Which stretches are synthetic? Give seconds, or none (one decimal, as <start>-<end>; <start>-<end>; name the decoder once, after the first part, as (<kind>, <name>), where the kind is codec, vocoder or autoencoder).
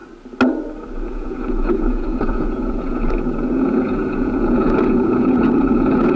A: 1.1-6.2 (vocoder, Vocos)